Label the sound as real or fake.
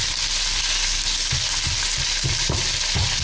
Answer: real